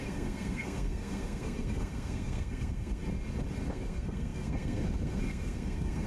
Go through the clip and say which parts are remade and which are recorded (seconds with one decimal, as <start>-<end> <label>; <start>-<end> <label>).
0.0-3.0 remade; 3.0-3.7 recorded; 3.7-6.1 remade